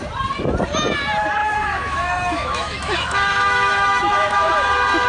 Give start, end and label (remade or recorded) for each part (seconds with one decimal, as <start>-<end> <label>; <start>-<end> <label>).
0.0-1.4 recorded; 1.4-4.5 remade; 4.5-5.1 recorded

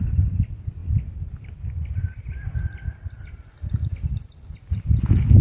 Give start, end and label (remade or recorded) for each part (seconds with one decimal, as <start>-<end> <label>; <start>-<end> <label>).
0.0-5.4 recorded

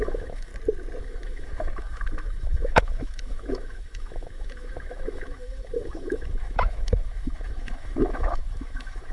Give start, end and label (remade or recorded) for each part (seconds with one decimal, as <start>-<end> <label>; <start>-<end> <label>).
0.0-0.5 remade; 0.5-1.0 recorded; 1.0-9.1 remade

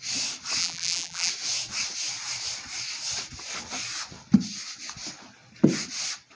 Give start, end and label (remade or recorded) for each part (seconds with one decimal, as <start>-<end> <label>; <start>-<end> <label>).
0.0-0.6 recorded; 0.6-1.3 remade; 1.3-6.4 recorded

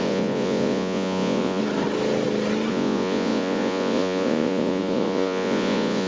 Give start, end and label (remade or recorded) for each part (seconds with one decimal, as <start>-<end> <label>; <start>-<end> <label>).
0.0-1.6 remade; 1.6-2.7 recorded; 2.7-6.1 remade

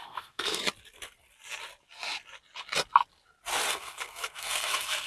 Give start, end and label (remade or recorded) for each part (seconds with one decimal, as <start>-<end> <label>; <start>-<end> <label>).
0.0-0.6 remade; 0.6-3.7 recorded; 3.7-5.1 remade

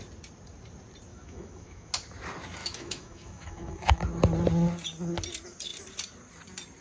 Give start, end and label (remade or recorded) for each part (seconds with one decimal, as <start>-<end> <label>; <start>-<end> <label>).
0.0-1.1 recorded; 1.1-1.9 remade; 1.9-2.6 recorded; 2.6-4.0 remade; 4.0-6.8 recorded